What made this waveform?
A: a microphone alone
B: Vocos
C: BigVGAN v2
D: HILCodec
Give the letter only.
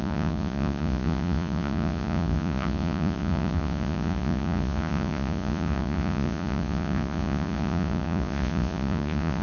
B